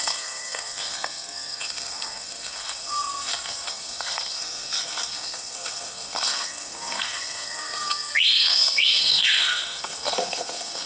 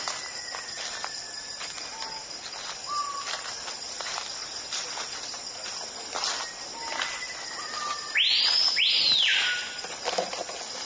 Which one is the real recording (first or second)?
second